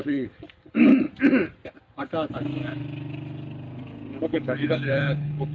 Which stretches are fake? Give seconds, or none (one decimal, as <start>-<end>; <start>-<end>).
0.0-0.9; 4.2-5.5